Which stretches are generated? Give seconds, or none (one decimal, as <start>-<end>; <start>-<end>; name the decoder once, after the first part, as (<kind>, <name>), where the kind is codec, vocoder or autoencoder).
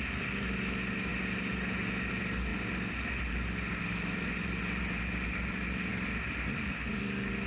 none